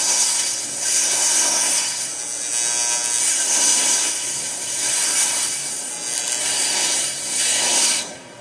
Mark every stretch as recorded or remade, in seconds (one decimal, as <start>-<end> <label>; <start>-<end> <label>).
0.0-2.1 remade; 2.1-3.2 recorded; 3.2-5.9 remade; 5.9-6.4 recorded; 6.4-8.4 remade